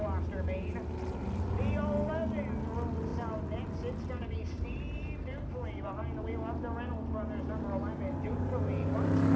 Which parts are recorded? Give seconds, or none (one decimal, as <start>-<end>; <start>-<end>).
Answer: 0.0-9.4